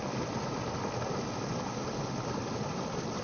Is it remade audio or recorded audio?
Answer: recorded